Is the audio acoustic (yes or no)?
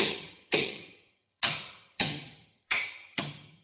no